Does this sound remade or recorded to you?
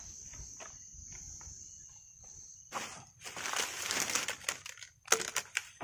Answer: recorded